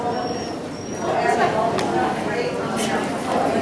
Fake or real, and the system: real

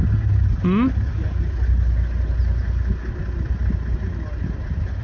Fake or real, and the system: real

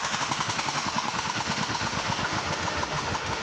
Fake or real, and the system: fake, autoencoder, DAC-VAE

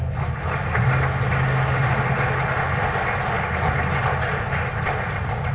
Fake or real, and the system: real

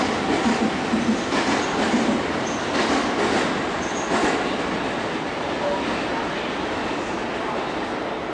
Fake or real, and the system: real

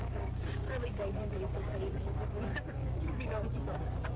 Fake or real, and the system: fake, codec, DAC